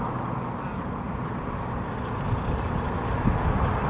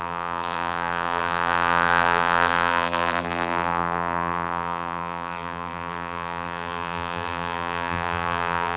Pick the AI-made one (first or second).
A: second